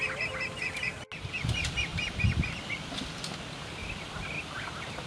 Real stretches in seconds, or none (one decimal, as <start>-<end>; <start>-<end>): 0.0-5.1